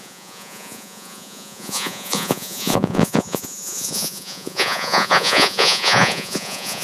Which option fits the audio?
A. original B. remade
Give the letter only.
B